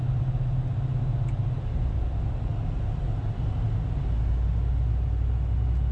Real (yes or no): yes